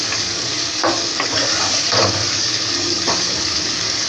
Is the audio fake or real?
fake